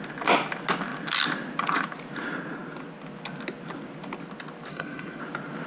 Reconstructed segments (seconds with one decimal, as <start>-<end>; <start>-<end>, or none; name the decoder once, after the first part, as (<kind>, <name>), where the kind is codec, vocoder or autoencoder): 4.7-5.2 (codec, SNAC)